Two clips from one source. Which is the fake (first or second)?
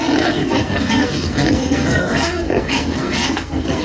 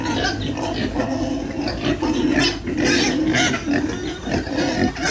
first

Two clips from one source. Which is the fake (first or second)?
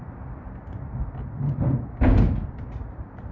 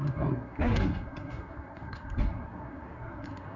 second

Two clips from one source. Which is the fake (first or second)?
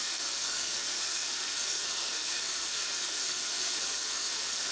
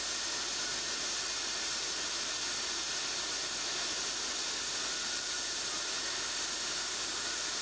first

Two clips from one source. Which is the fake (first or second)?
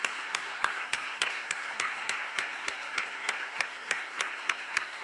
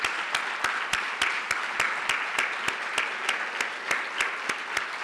first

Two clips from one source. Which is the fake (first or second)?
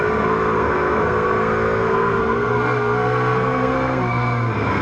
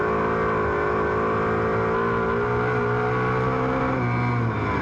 first